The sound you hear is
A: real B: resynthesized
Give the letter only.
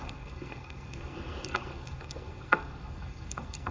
B